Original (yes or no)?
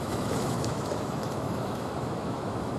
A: no